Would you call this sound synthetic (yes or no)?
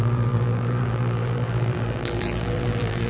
yes